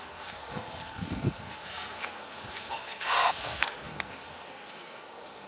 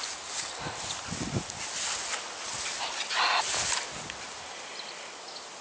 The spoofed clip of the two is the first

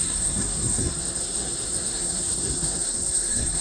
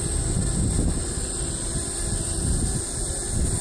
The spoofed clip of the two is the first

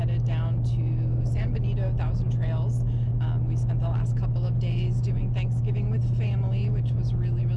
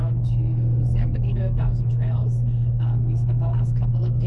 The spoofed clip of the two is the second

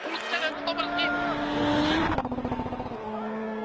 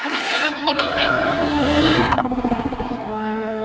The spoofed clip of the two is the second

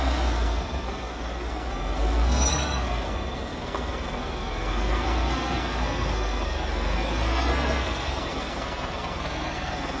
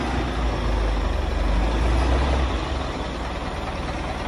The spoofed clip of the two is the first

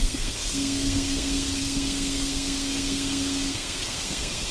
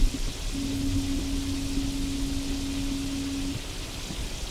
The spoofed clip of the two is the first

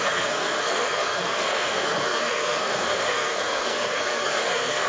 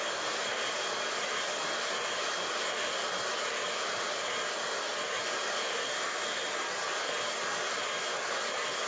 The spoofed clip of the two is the first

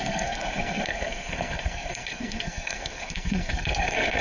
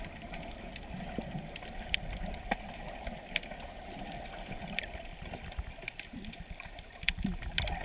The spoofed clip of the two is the first